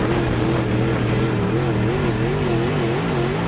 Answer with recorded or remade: recorded